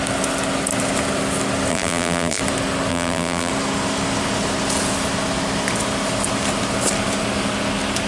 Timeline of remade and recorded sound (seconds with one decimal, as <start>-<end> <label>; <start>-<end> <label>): 0.0-1.7 recorded; 1.7-2.4 remade; 2.4-2.9 recorded; 2.9-3.5 remade; 3.5-8.1 recorded